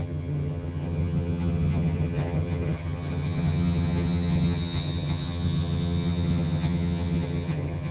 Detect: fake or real fake